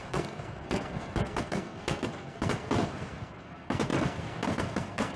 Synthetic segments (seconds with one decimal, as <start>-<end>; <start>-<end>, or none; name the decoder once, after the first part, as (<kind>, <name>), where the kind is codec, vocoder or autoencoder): 0.0-5.2 (codec, SNAC)